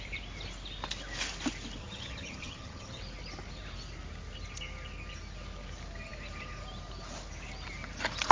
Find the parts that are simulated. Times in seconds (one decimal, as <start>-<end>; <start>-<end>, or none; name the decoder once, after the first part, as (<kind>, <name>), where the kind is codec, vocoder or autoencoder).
1.8-3.0 (vocoder, HiFi-GAN)